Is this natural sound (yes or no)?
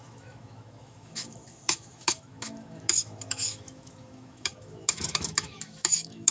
no